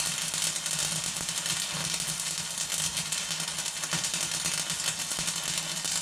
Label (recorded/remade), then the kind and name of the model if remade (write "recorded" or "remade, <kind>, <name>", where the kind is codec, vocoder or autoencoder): recorded